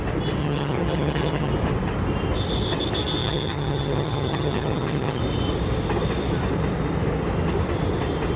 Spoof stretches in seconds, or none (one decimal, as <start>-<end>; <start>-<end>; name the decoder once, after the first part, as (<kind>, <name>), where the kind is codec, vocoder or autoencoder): 0.4-1.5 (vocoder, HiFi-GAN); 3.2-5.2

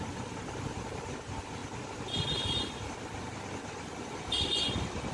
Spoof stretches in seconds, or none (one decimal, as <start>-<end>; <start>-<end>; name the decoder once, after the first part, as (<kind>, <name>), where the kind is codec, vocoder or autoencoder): none

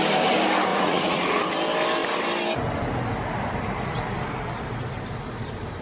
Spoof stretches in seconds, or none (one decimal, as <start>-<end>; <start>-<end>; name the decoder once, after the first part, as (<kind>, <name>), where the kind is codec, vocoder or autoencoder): 0.7-1.4 (vocoder, Vocos)